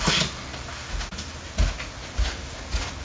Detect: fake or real real